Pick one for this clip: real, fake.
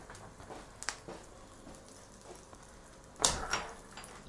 real